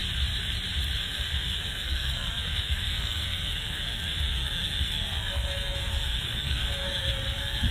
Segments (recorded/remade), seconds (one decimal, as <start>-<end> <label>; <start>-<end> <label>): 0.0-1.0 recorded; 1.0-7.7 remade

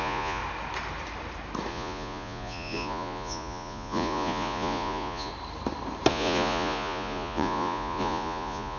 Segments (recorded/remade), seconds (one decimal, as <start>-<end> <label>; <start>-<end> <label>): 0.0-0.4 remade; 0.4-1.7 recorded; 1.7-5.3 remade; 5.3-6.1 recorded; 6.1-8.8 remade

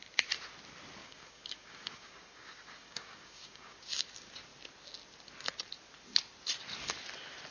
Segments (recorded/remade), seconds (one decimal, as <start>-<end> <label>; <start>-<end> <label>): 0.0-1.0 recorded; 1.0-3.8 remade; 3.8-7.5 recorded

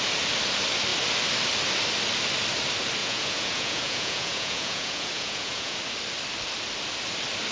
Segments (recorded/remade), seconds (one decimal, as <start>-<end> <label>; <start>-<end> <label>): 0.0-3.0 recorded; 3.0-5.8 remade; 5.8-7.5 recorded

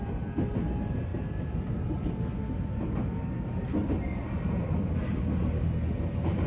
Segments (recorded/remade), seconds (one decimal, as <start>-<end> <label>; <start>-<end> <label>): 0.0-1.1 recorded; 1.1-5.0 remade; 5.0-6.5 recorded

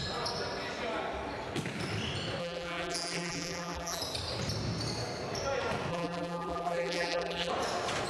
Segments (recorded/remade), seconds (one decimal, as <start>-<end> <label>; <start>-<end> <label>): 0.0-2.4 recorded; 2.4-4.0 remade; 4.0-5.9 recorded; 5.9-7.5 remade; 7.5-8.1 recorded

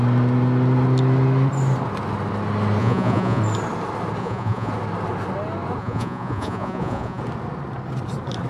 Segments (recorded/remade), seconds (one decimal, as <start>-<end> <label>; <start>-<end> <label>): 0.0-2.8 recorded; 2.8-3.4 remade; 3.4-4.2 recorded; 4.2-4.7 remade; 4.7-5.8 recorded; 5.8-7.2 remade; 7.2-8.5 recorded

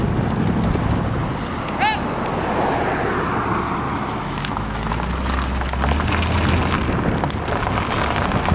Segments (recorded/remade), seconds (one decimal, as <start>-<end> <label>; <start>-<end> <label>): 0.0-3.9 recorded; 3.9-4.9 remade; 4.9-8.5 recorded